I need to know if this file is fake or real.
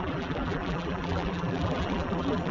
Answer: fake